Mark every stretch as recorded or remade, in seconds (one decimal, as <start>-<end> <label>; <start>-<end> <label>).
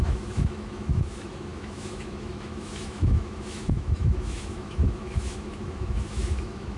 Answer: 0.0-6.8 remade